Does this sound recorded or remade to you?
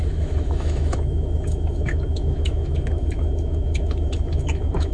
remade